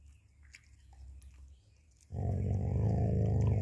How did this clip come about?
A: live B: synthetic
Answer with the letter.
A